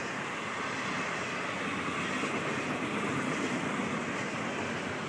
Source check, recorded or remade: recorded